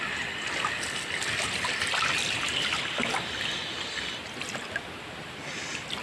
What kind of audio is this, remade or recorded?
recorded